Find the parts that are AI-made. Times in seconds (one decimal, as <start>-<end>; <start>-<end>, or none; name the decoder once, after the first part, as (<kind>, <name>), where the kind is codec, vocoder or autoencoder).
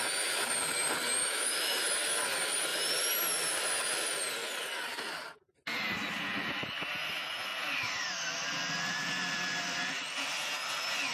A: 1.2-1.8 (autoencoder, DAC-VAE)